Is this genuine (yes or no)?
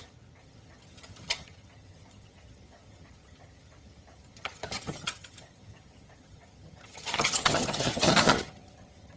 no